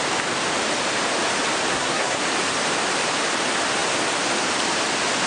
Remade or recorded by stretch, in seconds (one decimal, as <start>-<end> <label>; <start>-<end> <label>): 0.0-1.7 recorded; 1.7-2.2 remade; 2.2-5.3 recorded